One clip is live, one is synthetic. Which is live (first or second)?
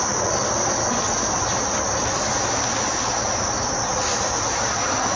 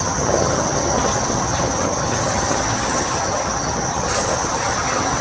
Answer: first